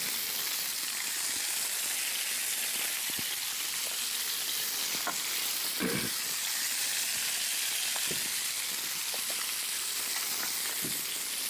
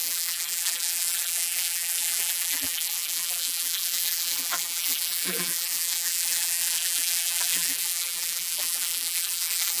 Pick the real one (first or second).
first